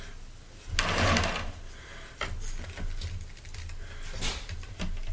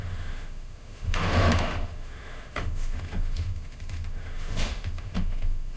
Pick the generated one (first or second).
second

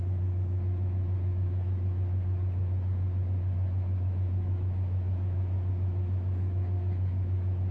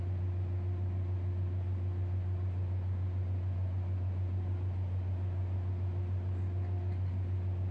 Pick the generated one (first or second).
first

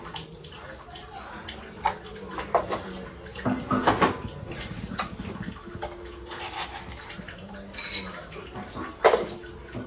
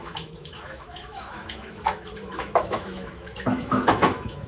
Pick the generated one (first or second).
second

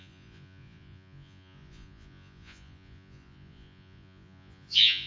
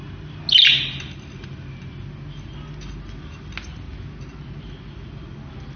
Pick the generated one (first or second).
first